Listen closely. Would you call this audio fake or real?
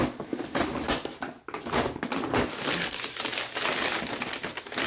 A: real